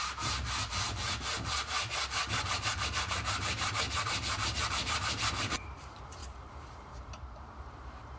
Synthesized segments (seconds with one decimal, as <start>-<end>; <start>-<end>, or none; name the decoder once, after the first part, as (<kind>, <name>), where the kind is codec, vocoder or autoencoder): 0.0-8.2 (vocoder, BigVGAN v2)